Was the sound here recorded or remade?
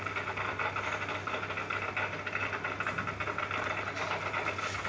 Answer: recorded